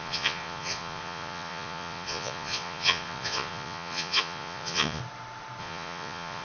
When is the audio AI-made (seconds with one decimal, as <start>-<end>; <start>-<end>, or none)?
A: 0.0-5.0; 5.6-6.4